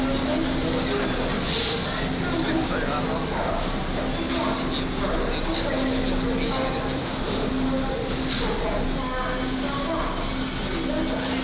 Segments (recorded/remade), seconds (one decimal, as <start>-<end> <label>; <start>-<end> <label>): 0.0-7.0 recorded; 7.0-7.5 remade; 7.5-11.4 recorded